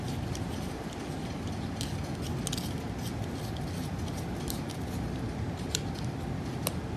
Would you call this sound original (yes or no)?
yes